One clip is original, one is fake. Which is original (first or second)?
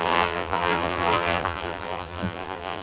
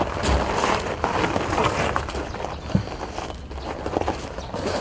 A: second